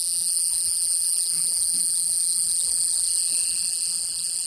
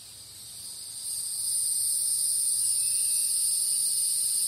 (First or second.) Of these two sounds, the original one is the second